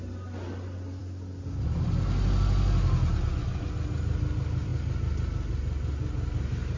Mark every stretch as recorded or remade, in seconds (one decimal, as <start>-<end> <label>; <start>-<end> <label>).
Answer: 0.0-6.8 recorded